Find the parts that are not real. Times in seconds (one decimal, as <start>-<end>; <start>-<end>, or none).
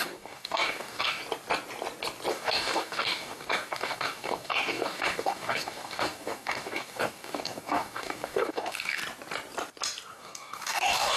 0.0-1.2; 2.3-9.0; 10.1-11.2